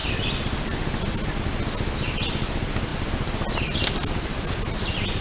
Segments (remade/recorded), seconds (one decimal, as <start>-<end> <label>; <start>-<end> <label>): 0.0-5.2 recorded